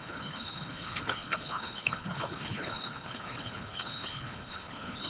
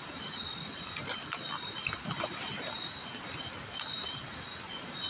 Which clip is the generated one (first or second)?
first